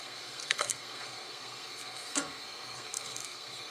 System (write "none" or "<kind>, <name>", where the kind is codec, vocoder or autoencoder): codec, SNAC